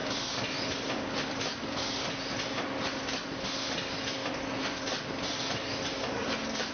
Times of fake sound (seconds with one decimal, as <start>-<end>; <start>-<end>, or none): none